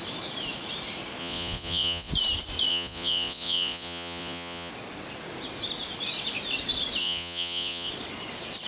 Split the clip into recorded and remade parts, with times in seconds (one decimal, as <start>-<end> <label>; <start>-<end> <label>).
0.0-1.2 recorded; 1.2-2.1 remade; 2.1-2.7 recorded; 2.7-4.7 remade; 4.7-7.0 recorded; 7.0-7.9 remade; 7.9-8.7 recorded

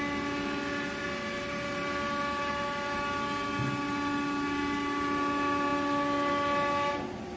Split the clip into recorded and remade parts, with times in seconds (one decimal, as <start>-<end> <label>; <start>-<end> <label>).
0.0-7.4 recorded

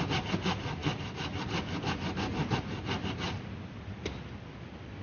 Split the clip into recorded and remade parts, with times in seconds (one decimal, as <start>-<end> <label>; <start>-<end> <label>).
0.0-5.0 recorded

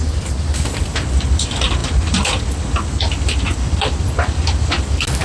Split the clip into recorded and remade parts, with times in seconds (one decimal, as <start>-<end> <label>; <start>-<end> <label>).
0.0-5.2 recorded

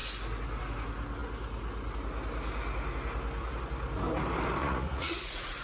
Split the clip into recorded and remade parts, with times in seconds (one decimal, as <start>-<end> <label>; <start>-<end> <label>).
0.0-4.6 recorded; 4.6-5.6 remade

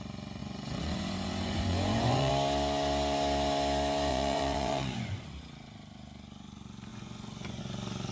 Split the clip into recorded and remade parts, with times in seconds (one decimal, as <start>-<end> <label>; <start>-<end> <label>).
0.0-0.4 recorded; 0.4-2.3 remade; 2.3-4.1 recorded; 4.1-5.2 remade; 5.2-6.9 recorded; 6.9-7.6 remade; 7.6-8.1 recorded